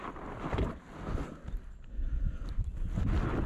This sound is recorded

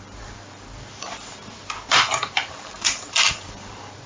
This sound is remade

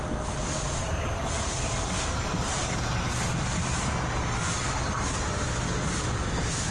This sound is recorded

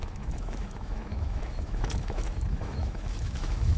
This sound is remade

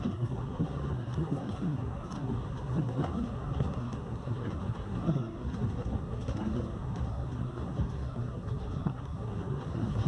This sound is remade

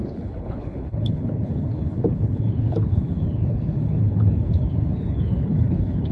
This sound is remade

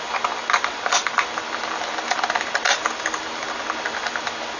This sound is recorded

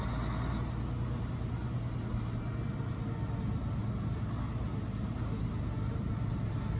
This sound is recorded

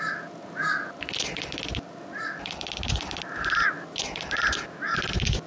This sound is recorded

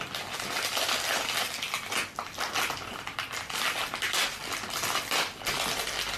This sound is recorded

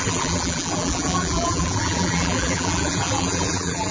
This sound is remade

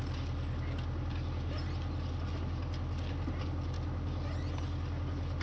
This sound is recorded